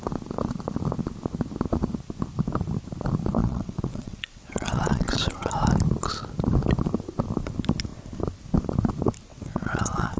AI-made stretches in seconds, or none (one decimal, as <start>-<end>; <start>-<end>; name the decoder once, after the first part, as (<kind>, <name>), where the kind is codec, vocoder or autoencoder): 3.4-5.5 (vocoder, WaveNeXt); 9.3-10.2